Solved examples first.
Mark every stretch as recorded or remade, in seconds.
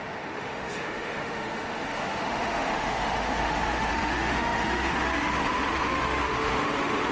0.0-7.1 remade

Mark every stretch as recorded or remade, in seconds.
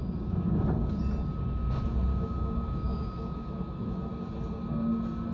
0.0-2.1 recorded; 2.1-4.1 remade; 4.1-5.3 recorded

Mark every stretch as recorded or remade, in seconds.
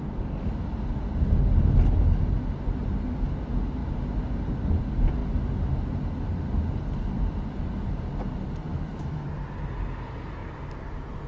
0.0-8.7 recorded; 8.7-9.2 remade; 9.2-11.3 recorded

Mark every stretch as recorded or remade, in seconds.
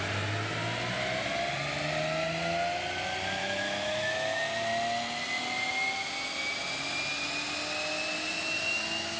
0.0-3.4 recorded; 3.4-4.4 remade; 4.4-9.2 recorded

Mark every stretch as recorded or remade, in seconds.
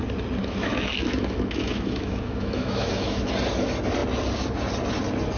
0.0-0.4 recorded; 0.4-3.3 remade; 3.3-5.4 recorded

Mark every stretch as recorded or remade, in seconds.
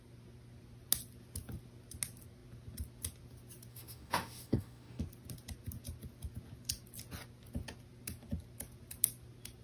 0.0-3.7 recorded; 3.7-5.0 remade; 5.0-9.6 recorded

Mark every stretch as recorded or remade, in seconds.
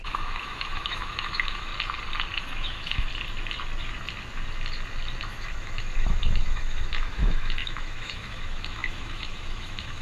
0.0-1.7 remade; 1.7-2.4 recorded; 2.4-3.1 remade; 3.1-5.2 recorded; 5.2-10.0 remade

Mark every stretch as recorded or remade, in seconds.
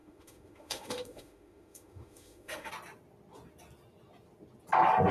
0.0-2.7 remade; 2.7-5.1 recorded